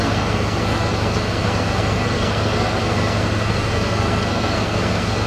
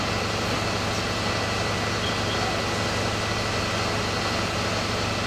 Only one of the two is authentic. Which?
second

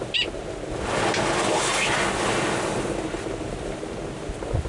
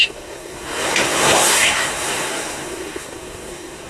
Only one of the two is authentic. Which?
first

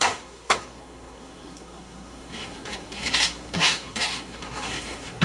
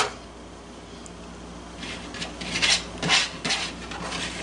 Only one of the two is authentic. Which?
second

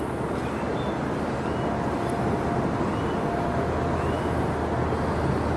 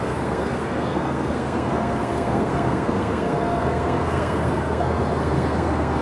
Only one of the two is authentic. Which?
first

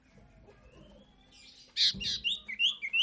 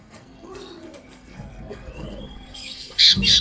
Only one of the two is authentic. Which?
first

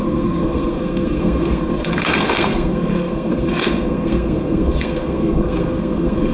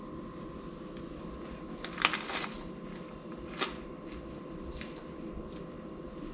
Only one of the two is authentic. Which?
second